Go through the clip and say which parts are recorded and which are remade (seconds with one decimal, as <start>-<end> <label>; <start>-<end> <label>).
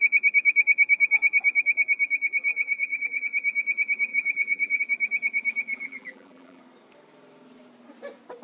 0.0-2.5 recorded; 2.5-3.2 remade; 3.2-4.1 recorded; 4.1-4.8 remade; 4.8-5.7 recorded; 5.7-6.6 remade; 6.6-8.4 recorded